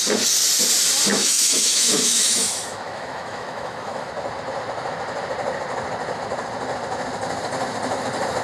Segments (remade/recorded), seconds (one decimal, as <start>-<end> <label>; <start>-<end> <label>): 0.0-1.1 recorded; 1.1-4.1 remade; 4.1-8.4 recorded